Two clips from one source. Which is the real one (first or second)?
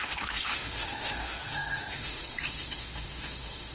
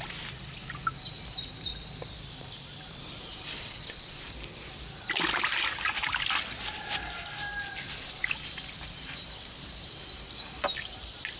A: second